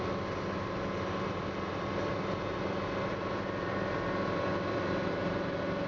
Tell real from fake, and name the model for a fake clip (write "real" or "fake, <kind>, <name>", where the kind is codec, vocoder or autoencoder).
real